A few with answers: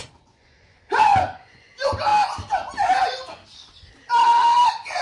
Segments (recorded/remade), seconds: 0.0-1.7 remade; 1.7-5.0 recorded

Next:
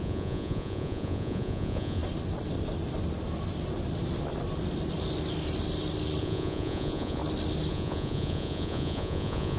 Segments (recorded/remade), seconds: 0.0-2.0 remade; 2.0-6.2 recorded; 6.2-7.2 remade; 7.2-7.7 recorded; 7.7-9.6 remade

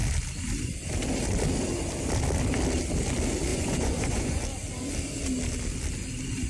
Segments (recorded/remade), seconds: 0.0-3.5 recorded; 3.5-4.4 remade; 4.4-6.5 recorded

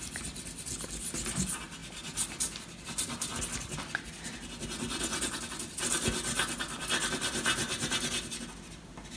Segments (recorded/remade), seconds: 0.0-9.2 recorded

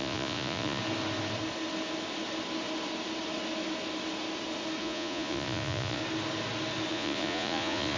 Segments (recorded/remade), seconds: 0.0-0.8 remade; 0.8-4.8 recorded; 4.8-6.0 remade; 6.0-6.9 recorded; 6.9-8.0 remade

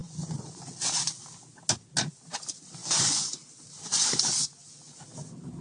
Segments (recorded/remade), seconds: 0.0-0.8 remade; 0.8-2.8 recorded; 2.8-3.3 remade; 3.3-5.6 recorded

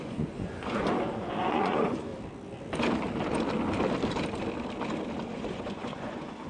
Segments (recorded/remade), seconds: 0.0-2.1 remade; 2.1-5.3 recorded; 5.3-6.5 remade